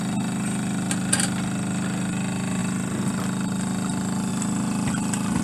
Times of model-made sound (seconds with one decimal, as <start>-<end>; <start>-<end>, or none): none

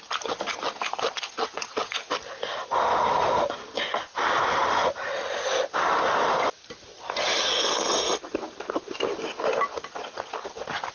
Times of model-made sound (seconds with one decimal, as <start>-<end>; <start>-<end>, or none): 0.0-0.5; 3.9-9.7; 10.5-10.9